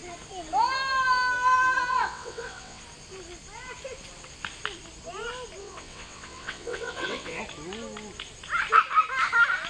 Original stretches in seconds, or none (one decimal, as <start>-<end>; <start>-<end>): 0.0-1.9; 2.8-5.6; 7.4-9.7